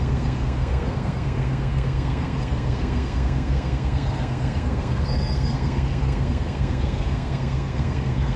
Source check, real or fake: fake